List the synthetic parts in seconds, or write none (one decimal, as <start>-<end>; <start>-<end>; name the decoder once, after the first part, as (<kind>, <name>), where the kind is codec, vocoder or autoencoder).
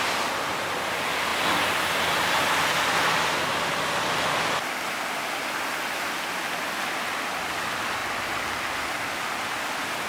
none